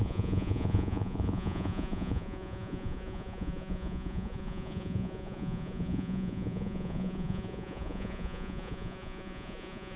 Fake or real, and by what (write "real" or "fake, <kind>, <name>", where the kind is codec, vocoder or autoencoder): fake, vocoder, Vocos